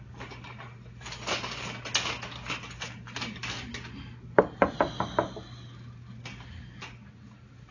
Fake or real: real